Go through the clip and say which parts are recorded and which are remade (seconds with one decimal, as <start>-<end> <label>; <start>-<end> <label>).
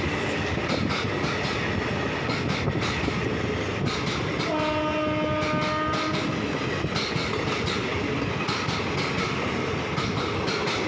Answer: 0.0-10.9 recorded